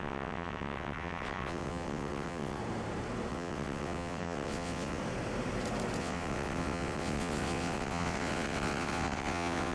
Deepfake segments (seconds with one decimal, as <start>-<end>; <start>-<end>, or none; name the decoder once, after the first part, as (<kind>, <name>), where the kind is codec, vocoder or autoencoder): 0.0-2.6 (vocoder, WaveNeXt); 3.3-5.0; 6.0-9.7